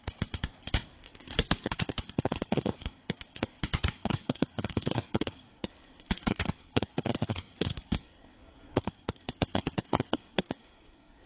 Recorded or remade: remade